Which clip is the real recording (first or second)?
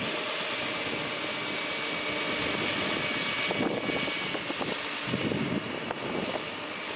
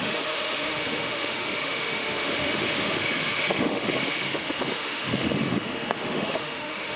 first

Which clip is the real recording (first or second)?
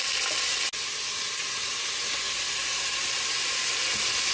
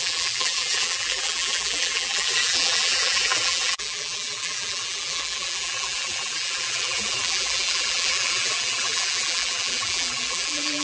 first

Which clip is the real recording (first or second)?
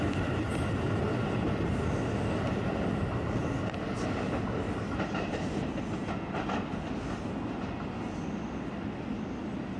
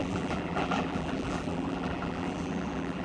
first